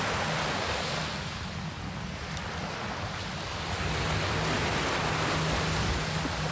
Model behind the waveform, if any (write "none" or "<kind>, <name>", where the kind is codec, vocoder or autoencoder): none